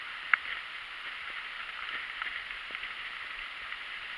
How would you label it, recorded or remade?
recorded